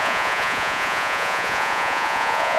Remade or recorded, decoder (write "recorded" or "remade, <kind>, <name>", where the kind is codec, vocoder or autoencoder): remade, vocoder, Vocos